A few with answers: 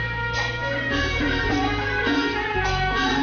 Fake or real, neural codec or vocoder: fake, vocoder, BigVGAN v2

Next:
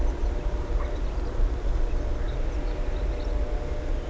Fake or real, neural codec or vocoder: real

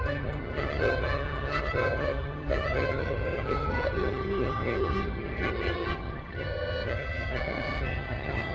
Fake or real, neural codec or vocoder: fake, vocoder, HiFi-GAN